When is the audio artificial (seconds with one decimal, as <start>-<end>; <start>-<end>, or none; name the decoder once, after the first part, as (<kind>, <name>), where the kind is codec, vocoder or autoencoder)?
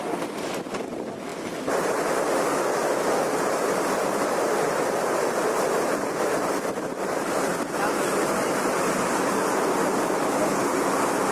6.9-7.5 (vocoder, BigVGAN v2)